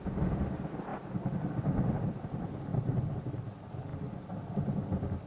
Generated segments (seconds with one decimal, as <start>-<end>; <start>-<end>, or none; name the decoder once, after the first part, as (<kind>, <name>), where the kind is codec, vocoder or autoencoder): none